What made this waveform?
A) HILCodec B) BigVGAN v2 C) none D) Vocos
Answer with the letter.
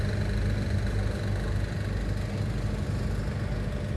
C